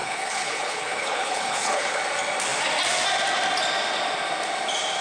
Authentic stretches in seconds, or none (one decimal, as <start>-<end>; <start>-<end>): 2.0-5.0